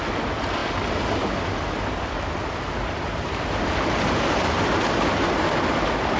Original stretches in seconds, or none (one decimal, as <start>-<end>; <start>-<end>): 0.0-6.2